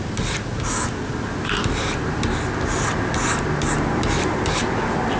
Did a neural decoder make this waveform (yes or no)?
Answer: no